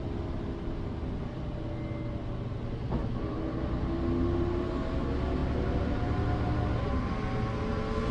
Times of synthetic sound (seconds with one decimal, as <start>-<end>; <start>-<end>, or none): none